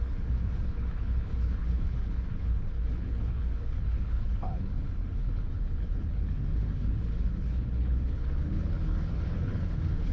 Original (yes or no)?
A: no